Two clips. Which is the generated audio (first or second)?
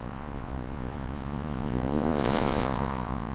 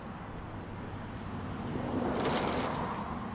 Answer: first